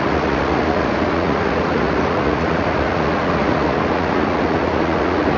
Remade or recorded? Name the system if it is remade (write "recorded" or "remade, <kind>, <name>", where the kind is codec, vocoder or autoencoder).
remade, vocoder, Vocos